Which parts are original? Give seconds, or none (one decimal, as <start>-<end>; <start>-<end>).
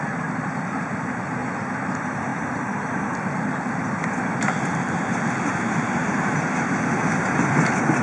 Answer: 0.0-2.3; 2.8-5.5; 6.3-8.0